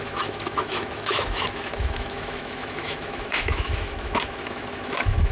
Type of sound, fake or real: fake